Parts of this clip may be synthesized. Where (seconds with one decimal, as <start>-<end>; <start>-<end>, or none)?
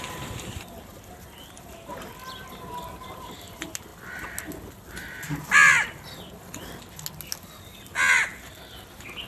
none